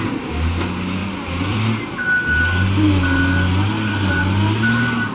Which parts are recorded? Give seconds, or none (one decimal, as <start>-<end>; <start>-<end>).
0.0-5.1